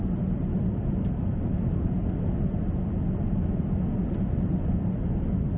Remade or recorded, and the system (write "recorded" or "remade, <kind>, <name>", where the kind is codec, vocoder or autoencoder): recorded